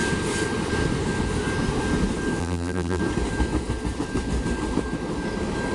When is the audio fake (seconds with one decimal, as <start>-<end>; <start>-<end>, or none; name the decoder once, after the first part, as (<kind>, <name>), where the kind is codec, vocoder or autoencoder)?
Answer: 2.4-3.0 (vocoder, BigVGAN v2)